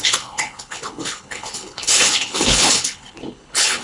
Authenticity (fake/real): fake